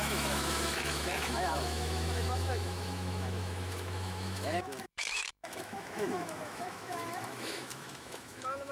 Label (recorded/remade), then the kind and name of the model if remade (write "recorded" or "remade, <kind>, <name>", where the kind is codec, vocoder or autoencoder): remade, autoencoder, DAC-VAE